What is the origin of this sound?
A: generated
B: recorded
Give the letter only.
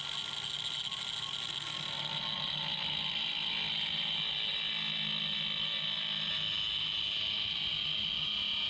B